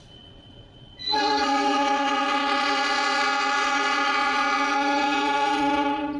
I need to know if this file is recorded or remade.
remade